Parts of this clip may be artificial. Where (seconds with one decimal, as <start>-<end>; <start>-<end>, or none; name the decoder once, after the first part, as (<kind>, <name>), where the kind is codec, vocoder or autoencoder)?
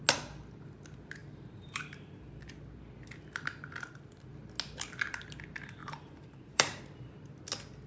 1.2-2.5 (vocoder, BigVGAN v2); 5.8-6.8